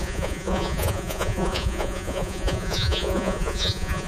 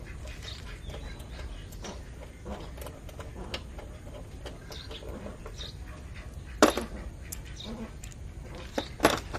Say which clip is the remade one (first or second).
first